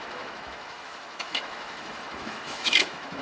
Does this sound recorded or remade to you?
remade